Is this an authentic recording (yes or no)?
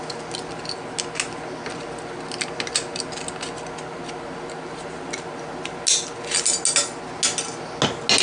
yes